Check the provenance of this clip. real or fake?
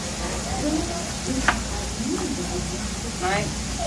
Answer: real